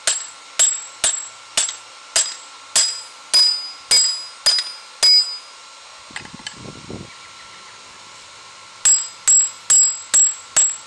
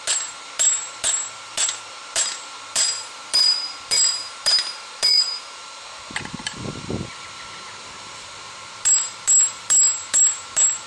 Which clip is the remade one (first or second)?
second